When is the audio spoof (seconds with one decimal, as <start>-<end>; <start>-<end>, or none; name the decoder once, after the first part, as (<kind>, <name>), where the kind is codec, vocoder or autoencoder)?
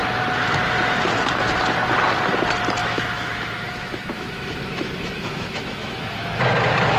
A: 2.8-6.4 (autoencoder, DAC-VAE)